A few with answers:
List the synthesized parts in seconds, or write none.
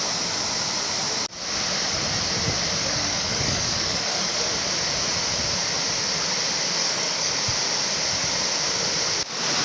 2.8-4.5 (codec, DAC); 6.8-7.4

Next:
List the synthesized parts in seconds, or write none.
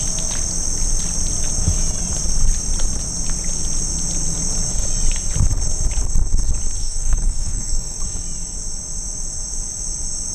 6.8-8.0 (codec, SNAC)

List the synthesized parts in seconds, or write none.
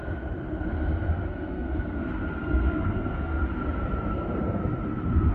1.1-3.4 (codec, SNAC); 4.1-4.6